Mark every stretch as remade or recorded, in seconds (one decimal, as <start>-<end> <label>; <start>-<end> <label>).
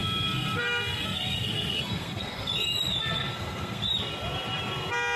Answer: 0.0-2.5 remade; 2.5-3.0 recorded; 3.0-3.8 remade; 3.8-5.2 recorded